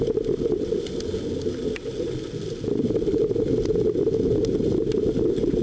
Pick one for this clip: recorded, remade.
recorded